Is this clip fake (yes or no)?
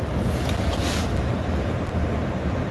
no